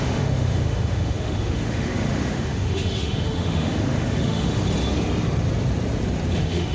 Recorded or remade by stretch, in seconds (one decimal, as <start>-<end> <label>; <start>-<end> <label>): 0.0-4.6 remade; 4.6-6.3 recorded; 6.3-6.7 remade